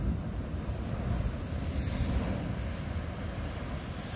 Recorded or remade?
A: recorded